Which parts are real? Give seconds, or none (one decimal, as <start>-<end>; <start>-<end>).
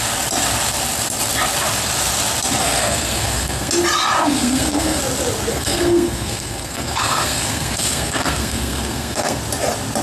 0.0-2.6; 3.7-4.2; 5.0-5.5; 9.4-10.0